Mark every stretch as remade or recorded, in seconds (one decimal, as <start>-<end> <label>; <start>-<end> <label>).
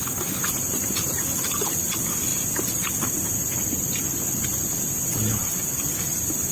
0.0-6.5 recorded